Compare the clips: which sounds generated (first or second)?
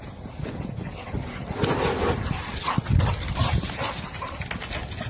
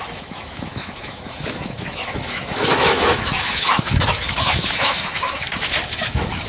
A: second